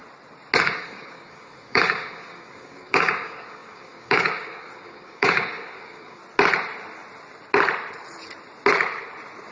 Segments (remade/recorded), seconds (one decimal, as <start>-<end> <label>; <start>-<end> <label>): 0.0-0.6 recorded; 0.6-6.2 remade; 6.2-9.5 recorded

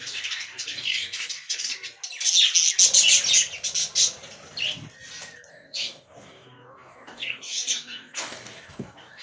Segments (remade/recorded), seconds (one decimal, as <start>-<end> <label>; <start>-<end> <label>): 0.0-1.7 remade; 1.7-5.5 recorded; 5.5-9.2 remade